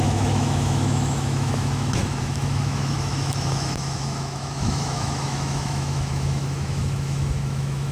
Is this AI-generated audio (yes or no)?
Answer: yes